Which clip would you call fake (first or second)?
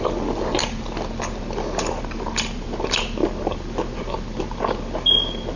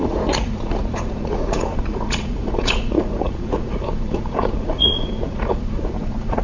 second